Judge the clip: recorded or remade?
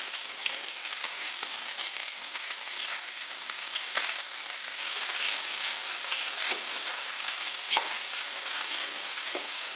remade